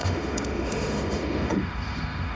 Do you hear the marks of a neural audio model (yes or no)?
yes